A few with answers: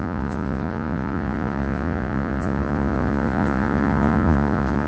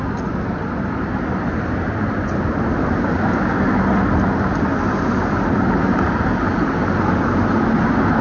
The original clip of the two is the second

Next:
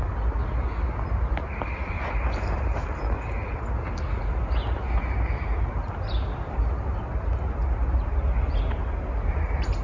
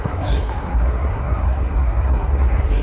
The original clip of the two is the first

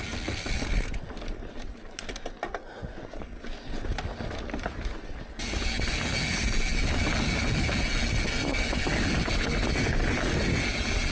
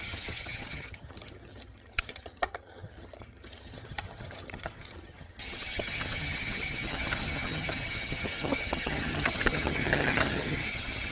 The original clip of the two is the first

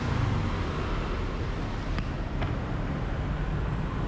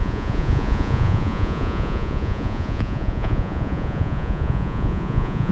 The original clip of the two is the first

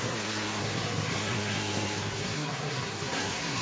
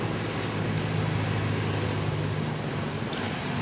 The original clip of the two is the second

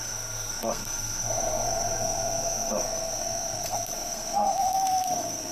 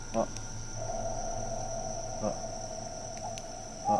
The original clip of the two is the second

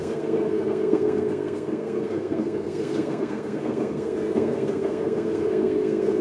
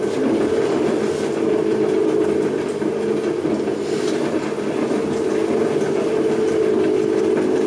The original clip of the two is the second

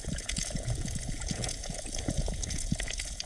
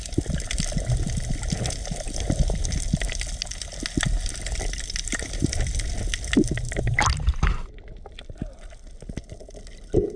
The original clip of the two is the second